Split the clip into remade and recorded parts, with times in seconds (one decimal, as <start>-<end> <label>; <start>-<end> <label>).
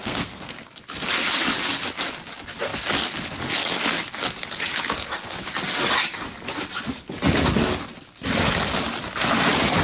0.0-0.5 remade; 0.5-9.8 recorded